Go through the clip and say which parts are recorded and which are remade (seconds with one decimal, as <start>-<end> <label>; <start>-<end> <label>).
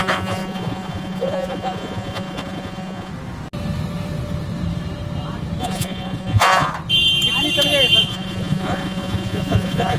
0.0-3.1 remade; 3.1-5.6 recorded; 5.6-6.7 remade; 6.7-8.0 recorded; 8.0-10.0 remade